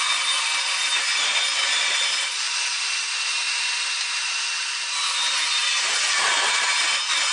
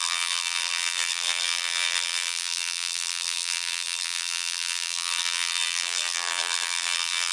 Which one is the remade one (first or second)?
second